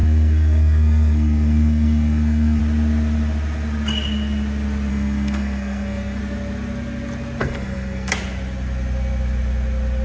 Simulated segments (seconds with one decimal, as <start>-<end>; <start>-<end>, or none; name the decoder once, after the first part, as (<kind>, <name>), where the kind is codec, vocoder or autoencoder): 0.0-2.6 (codec, SNAC); 4.9-6.2; 7.4-8.1